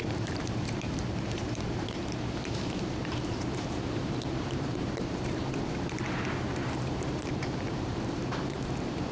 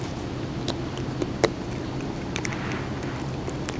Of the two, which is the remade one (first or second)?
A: first